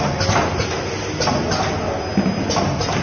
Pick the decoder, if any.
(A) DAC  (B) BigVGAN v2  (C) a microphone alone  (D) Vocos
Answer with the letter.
C